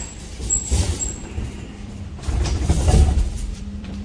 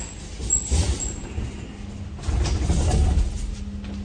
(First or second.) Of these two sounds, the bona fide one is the second